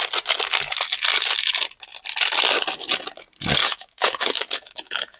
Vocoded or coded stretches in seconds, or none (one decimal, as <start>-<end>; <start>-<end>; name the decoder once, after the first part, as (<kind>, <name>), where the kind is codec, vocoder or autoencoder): 3.6-5.2 (autoencoder, DAC-VAE)

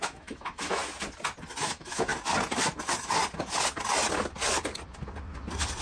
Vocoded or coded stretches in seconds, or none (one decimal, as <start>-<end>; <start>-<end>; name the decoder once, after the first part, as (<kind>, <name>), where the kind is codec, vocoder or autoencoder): 0.0-0.8 (autoencoder, DAC-VAE); 1.6-2.1